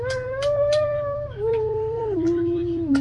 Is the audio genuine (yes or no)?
no